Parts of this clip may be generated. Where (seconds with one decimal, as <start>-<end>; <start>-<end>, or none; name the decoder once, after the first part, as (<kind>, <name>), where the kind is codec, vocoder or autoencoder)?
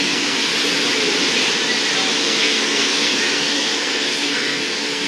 0.0-0.5 (codec, SNAC); 2.2-5.1